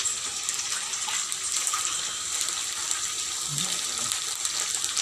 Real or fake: fake